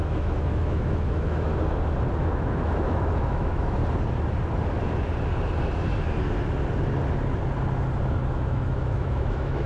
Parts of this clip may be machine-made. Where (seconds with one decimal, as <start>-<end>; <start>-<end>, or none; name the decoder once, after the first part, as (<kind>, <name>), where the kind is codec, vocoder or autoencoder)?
0.0-1.5 (autoencoder, DAC-VAE); 2.2-3.8; 8.3-9.7